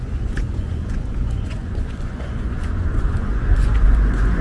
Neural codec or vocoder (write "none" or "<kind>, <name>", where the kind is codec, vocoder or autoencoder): vocoder, Vocos